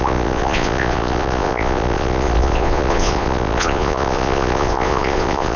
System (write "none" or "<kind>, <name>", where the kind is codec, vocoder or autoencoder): vocoder, Vocos